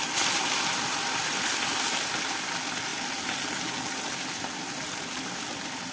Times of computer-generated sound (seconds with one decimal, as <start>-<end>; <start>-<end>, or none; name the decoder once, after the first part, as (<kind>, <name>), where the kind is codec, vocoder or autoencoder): none